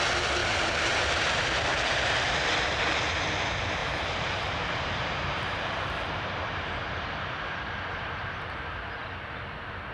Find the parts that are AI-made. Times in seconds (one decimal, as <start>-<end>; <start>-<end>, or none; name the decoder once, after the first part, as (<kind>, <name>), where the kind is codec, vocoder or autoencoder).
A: 0.4-1.1 (vocoder, BigVGAN v2); 1.7-3.0; 3.8-6.7